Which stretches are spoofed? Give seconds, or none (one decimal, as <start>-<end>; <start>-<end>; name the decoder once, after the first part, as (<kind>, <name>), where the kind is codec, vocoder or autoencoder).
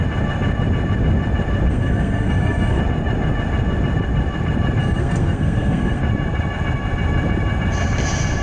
1.7-2.8 (codec, SNAC); 4.8-6.0